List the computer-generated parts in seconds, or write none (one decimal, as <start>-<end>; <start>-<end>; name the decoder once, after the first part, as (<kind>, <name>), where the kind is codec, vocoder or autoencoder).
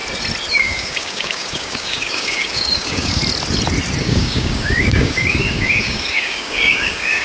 0.5-3.2 (codec, DAC); 4.0-7.2